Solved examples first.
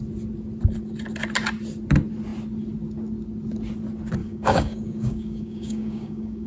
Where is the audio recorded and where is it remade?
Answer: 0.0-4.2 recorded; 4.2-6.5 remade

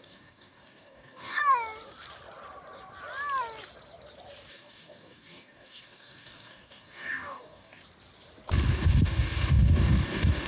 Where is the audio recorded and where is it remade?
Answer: 0.0-1.4 remade; 1.4-4.5 recorded; 4.5-7.8 remade; 7.8-8.7 recorded; 8.7-10.5 remade

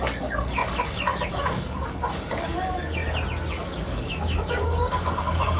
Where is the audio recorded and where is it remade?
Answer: 0.0-3.0 remade; 3.0-3.5 recorded; 3.5-5.6 remade

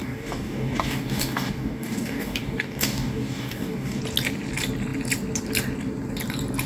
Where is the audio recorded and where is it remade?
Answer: 0.0-4.0 remade; 4.0-6.7 recorded

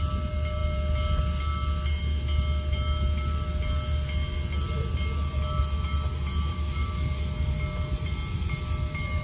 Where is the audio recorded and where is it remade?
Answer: 0.0-6.5 recorded; 6.5-7.2 remade; 7.2-9.2 recorded

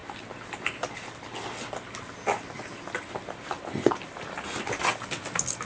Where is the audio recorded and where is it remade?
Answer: 0.0-5.7 recorded

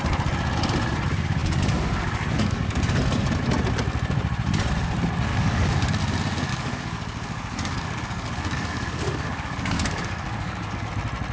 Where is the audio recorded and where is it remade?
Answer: 0.0-1.4 recorded; 1.4-2.8 remade; 2.8-5.3 recorded; 5.3-6.0 remade; 6.0-6.5 recorded; 6.5-10.9 remade; 10.9-11.3 recorded

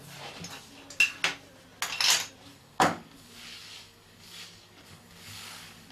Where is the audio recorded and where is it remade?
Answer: 0.0-2.5 recorded; 2.5-5.9 remade